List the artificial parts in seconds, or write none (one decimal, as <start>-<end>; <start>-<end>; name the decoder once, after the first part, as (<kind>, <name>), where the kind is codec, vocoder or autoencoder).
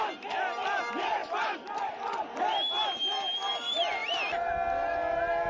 none